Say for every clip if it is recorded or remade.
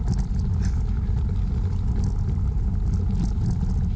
recorded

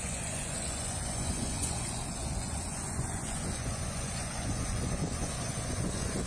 remade